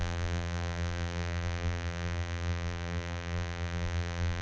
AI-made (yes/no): yes